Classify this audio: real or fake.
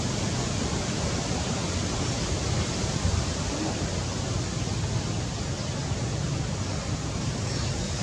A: real